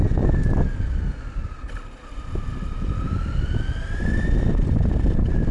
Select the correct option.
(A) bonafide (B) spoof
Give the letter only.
A